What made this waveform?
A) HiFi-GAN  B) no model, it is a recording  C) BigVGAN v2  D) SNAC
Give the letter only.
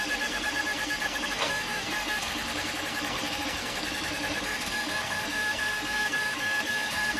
D